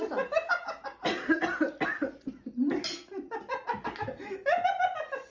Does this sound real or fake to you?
real